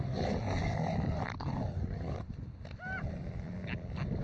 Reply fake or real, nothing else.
real